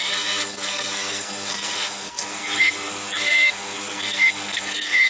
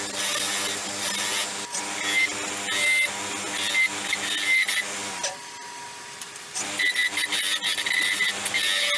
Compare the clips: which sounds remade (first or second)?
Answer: first